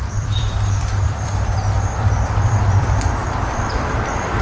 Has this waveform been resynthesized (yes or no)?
yes